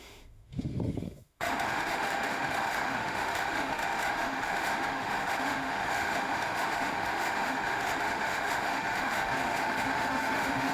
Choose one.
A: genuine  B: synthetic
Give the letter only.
B